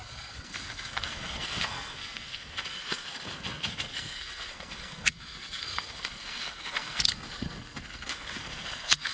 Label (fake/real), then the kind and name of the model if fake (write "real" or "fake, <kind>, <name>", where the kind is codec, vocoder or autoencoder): fake, codec, SNAC